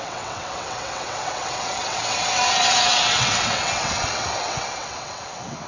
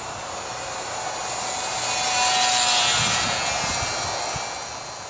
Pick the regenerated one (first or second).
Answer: first